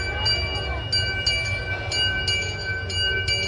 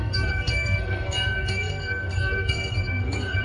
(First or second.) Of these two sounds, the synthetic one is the second